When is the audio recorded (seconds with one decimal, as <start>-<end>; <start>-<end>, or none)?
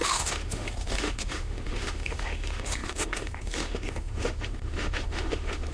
none